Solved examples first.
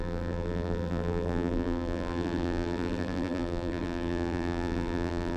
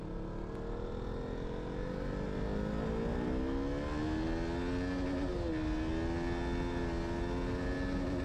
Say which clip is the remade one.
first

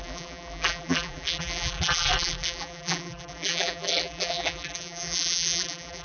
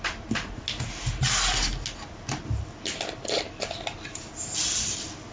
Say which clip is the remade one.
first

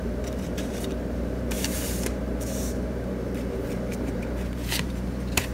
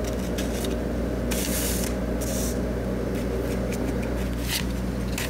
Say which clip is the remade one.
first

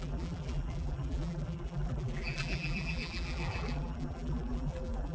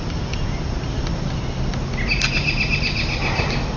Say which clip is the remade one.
first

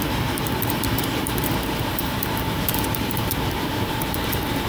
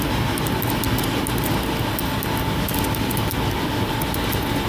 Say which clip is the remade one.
first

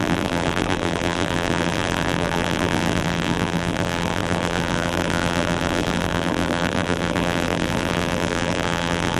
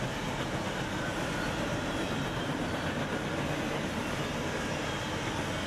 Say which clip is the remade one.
first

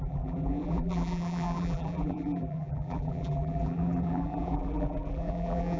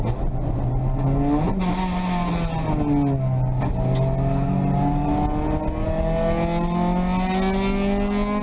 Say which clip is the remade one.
first